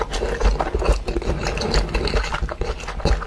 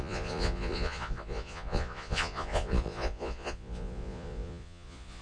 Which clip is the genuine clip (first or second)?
first